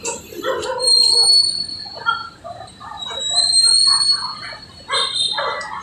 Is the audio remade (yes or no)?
no